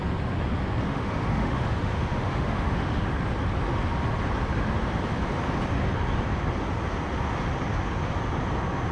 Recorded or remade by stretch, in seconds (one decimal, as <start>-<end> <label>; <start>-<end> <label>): 0.0-0.9 recorded; 0.9-3.1 remade; 3.1-8.9 recorded